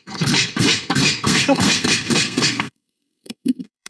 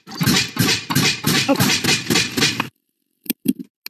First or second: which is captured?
second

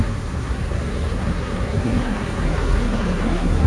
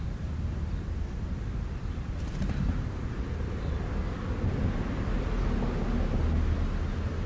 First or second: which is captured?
second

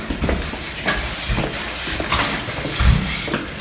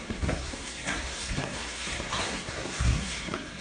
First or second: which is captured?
first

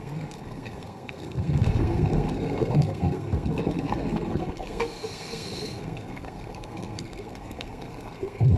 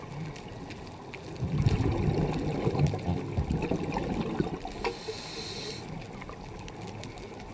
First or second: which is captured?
second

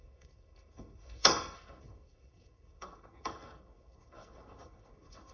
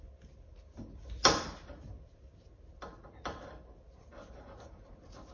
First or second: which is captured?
second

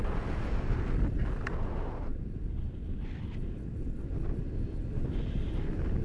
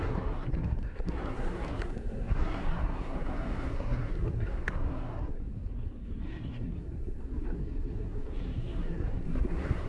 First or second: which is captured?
first